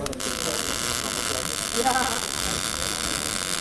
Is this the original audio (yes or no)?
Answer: yes